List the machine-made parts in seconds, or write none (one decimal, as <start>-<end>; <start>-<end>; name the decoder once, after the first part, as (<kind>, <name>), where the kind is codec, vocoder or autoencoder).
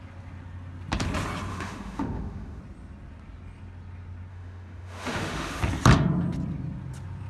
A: 1.5-2.6 (autoencoder, DAC-VAE); 4.3-5.6